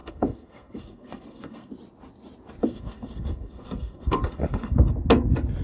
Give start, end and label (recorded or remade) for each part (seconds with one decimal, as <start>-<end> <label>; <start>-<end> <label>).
0.0-1.7 remade; 1.7-2.6 recorded; 2.6-4.9 remade; 4.9-5.6 recorded